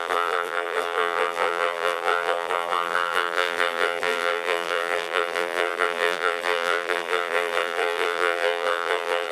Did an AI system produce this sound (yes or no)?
yes